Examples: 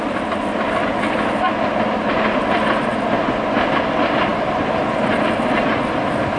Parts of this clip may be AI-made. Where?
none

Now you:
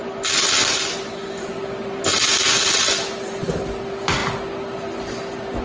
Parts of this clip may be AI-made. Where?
none